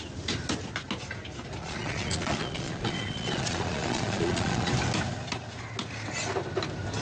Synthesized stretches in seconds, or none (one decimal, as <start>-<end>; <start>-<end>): 1.6-4.7